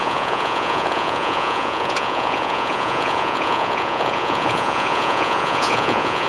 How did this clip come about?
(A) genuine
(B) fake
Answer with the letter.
B